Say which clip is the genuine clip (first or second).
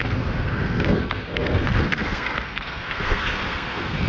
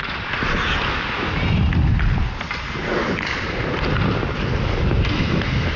second